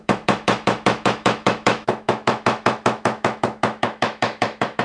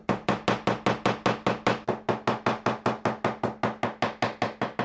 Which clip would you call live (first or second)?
second